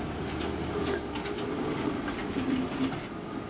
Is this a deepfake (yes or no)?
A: no